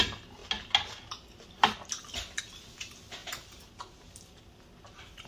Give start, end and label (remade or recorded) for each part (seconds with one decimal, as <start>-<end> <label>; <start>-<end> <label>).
0.0-5.3 recorded